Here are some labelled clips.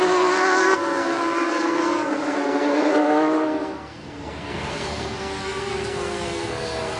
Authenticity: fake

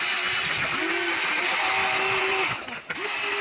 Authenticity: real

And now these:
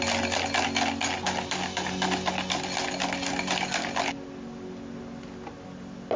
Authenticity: real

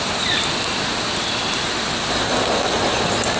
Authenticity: real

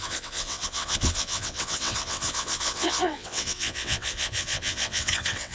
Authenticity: fake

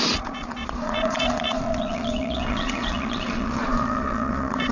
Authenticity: fake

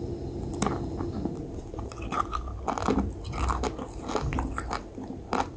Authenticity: real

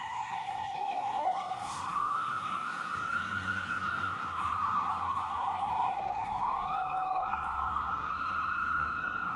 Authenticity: fake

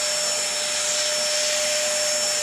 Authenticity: real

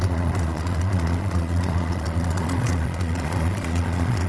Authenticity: fake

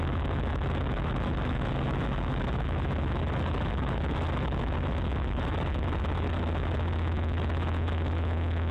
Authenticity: fake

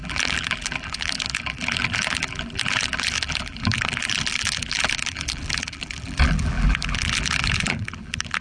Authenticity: fake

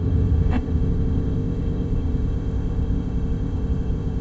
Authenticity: fake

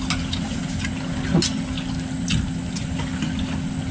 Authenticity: real